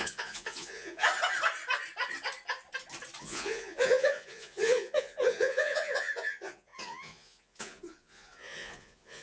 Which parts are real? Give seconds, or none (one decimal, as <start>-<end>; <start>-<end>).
1.1-3.2